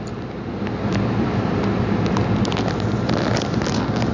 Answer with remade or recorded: recorded